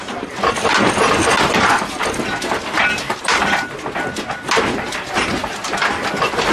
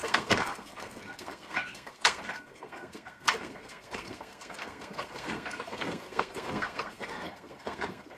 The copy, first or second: second